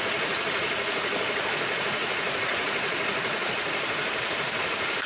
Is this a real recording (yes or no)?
no